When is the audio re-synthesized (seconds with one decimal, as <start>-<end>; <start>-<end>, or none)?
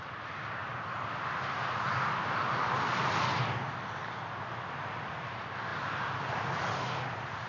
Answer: none